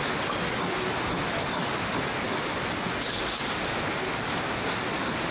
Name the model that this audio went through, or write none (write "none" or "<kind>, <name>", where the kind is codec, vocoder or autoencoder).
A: none